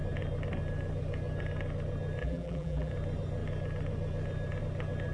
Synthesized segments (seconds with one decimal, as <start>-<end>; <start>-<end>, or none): 2.2-2.9